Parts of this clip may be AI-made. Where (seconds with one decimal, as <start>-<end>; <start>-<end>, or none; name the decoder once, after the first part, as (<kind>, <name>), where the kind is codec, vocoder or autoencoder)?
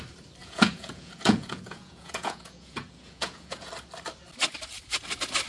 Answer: 0.4-3.7 (vocoder, Vocos)